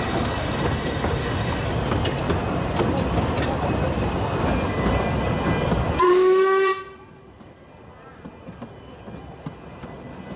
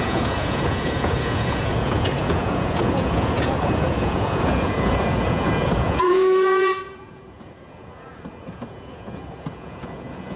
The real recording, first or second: first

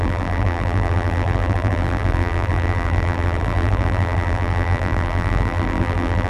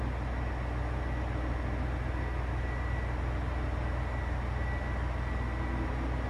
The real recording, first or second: second